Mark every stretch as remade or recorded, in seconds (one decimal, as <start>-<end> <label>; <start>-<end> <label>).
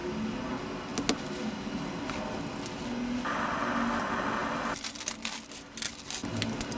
0.0-6.8 recorded